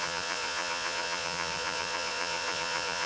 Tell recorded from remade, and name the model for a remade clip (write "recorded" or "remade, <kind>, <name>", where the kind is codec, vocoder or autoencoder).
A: remade, vocoder, Vocos